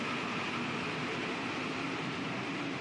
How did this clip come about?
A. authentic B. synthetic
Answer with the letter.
B